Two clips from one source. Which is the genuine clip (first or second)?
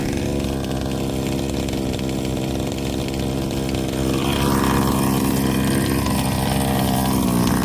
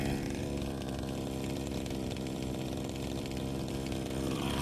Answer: first